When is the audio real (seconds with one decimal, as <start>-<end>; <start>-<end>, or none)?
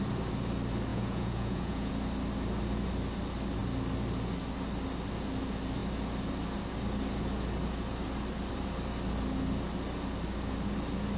0.0-0.9; 1.9-11.2